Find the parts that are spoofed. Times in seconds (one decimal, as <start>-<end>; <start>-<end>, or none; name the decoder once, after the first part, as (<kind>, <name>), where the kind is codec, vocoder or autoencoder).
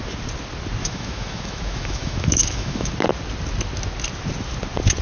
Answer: 0.8-2.9 (autoencoder, DAC-VAE)